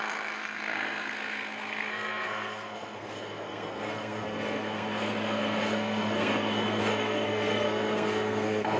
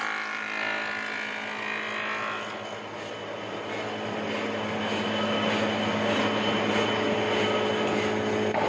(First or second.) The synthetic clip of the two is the first